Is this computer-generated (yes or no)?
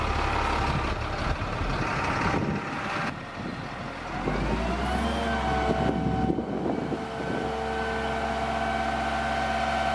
no